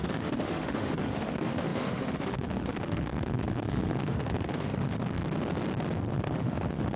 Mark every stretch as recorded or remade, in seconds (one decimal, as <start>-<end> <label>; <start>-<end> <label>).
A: 0.0-5.2 remade; 5.2-6.1 recorded; 6.1-7.0 remade